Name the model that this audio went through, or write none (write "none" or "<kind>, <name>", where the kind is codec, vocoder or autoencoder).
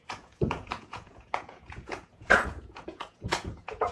vocoder, Vocos